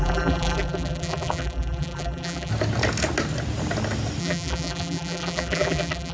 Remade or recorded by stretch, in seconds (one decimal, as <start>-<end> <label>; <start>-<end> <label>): 0.0-2.5 remade; 2.5-4.2 recorded; 4.2-6.1 remade